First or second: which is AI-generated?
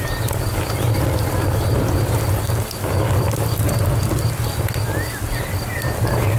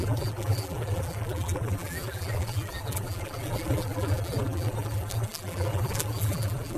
second